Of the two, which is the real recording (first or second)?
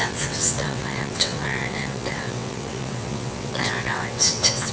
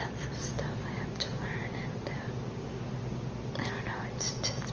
second